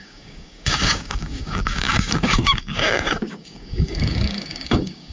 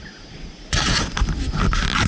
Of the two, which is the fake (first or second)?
first